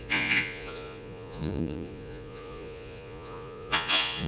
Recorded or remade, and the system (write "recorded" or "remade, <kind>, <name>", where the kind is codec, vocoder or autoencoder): remade, vocoder, Vocos